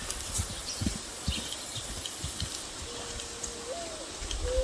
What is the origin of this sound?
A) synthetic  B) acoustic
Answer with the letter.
B